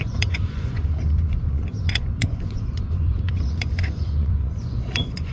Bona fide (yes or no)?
no